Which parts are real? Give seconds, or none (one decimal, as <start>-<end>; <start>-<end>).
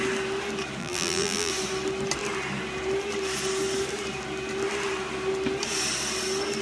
0.0-0.8; 1.5-6.6